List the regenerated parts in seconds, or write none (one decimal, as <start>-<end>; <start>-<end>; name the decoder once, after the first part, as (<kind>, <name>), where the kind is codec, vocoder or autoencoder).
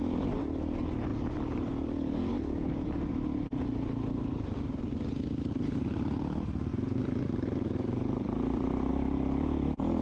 6.7-8.9 (vocoder, BigVGAN v2)